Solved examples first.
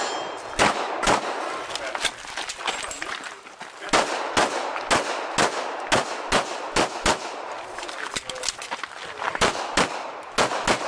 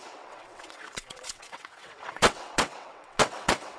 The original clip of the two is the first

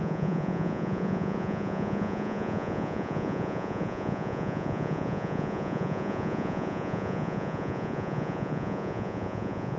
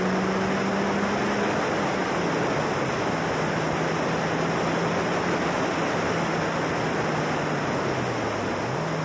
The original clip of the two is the second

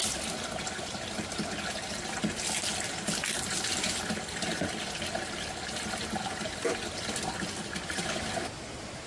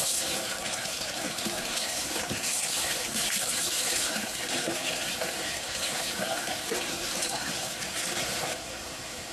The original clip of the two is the first